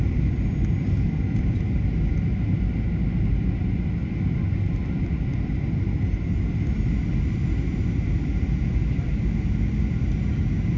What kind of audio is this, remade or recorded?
recorded